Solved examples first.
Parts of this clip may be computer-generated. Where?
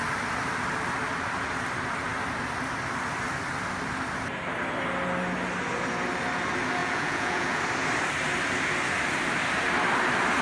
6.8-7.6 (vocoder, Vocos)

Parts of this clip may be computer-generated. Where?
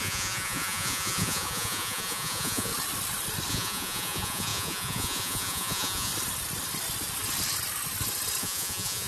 0.0-2.7 (vocoder, Vocos); 3.5-6.1; 8.4-9.1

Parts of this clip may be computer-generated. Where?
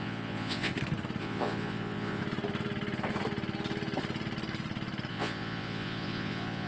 0.0-0.7 (vocoder, Vocos); 1.2-2.2; 5.1-6.7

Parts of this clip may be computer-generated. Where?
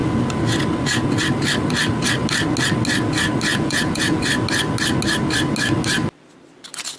3.5-4.2 (vocoder, Vocos)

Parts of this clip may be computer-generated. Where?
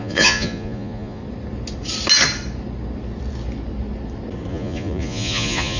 0.0-1.2 (vocoder, Vocos); 4.5-5.8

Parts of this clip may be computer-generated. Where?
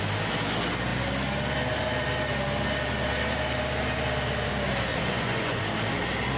4.9-5.6 (vocoder, Vocos)